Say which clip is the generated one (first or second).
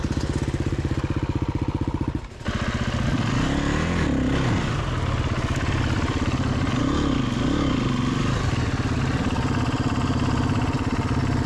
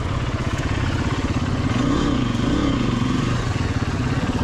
second